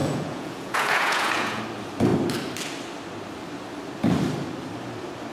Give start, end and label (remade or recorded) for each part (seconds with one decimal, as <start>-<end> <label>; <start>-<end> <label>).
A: 0.0-1.6 remade; 1.6-5.3 recorded